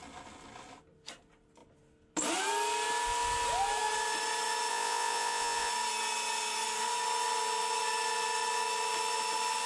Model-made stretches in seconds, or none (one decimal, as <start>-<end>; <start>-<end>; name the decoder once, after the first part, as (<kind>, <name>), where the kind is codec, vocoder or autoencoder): 4.7-5.7 (vocoder, Vocos)